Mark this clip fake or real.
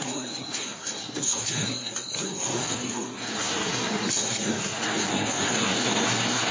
fake